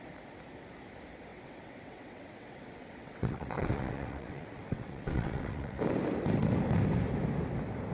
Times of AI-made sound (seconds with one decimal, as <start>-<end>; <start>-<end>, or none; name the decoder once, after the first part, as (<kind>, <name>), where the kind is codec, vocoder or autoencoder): 1.3-5.8 (vocoder, WaveNeXt)